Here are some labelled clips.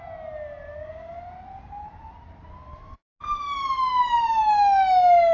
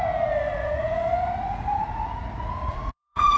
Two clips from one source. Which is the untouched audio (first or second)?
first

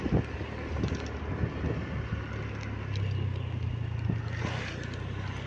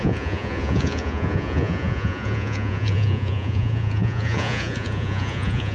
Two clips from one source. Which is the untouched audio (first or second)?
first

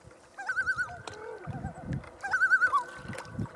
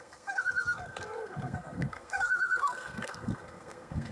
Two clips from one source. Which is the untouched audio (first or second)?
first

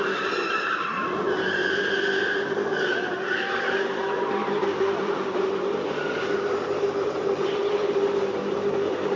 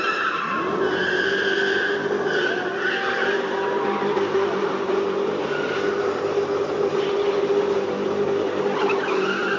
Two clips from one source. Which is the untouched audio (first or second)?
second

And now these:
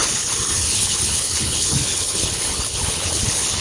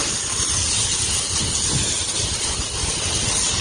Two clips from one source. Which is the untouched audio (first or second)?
second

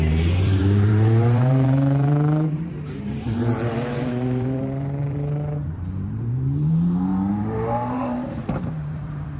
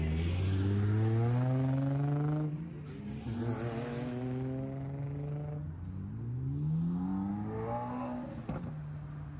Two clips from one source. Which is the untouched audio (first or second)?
second